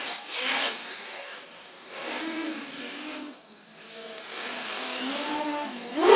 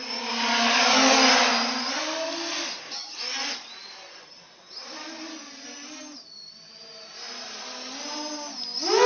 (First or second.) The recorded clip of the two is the second